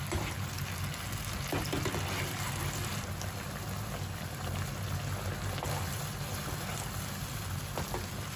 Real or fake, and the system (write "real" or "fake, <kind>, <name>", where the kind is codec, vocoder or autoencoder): real